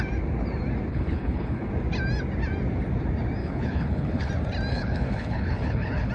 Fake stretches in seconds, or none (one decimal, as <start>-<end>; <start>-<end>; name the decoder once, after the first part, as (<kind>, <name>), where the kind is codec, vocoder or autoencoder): 0.9-1.7 (codec, HILCodec); 3.4-4.3; 4.7-6.1